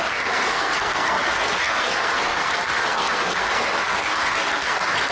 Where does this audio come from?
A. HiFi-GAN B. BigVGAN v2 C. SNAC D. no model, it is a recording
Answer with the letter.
C